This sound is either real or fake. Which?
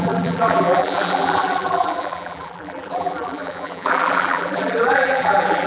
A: fake